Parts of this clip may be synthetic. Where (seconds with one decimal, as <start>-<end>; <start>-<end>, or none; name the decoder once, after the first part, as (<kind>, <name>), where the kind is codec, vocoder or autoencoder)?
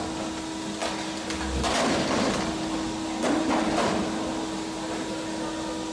none